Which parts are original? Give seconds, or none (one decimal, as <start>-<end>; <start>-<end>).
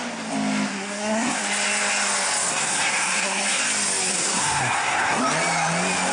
0.0-0.7; 1.4-2.5; 3.6-4.1; 5.2-6.1